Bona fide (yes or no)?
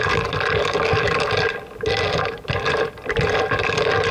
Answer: yes